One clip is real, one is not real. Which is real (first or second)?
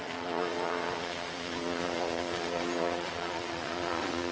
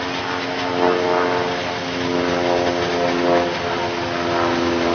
second